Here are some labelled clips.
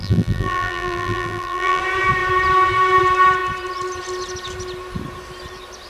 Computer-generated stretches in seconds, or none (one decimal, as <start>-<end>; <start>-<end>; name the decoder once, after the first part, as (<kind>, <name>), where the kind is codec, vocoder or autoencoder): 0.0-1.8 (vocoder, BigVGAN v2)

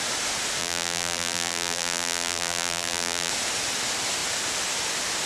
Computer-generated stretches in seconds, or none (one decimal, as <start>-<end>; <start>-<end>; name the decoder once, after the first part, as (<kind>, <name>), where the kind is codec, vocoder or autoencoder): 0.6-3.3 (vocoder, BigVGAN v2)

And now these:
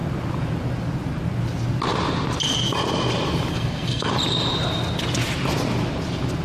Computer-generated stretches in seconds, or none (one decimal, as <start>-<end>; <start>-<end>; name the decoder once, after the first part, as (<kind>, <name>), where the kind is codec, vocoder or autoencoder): 3.5-4.1 (codec, SNAC)

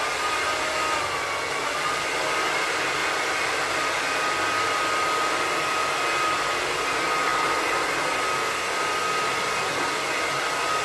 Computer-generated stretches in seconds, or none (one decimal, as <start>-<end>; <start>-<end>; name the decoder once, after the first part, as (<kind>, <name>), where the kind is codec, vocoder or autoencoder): 3.0-5.8 (vocoder, BigVGAN v2); 7.3-9.0

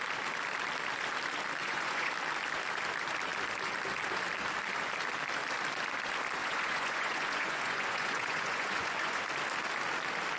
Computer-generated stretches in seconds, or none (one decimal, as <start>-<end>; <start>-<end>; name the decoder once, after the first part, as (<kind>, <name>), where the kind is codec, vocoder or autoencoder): 1.6-2.1 (vocoder, Vocos); 6.4-9.2